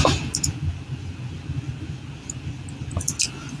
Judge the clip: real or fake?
real